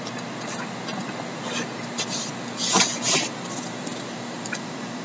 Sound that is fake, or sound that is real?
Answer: real